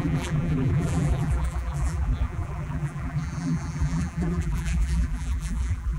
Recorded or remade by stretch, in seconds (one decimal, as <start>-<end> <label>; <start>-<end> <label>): 0.0-6.0 remade